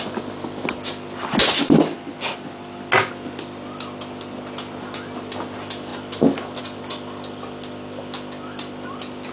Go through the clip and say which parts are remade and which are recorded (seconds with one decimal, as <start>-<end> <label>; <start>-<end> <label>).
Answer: 0.0-9.3 recorded